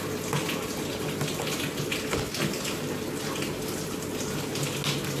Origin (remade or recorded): recorded